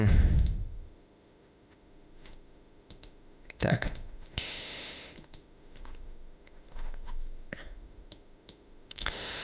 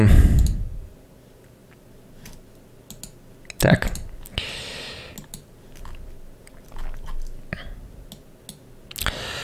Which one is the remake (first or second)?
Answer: first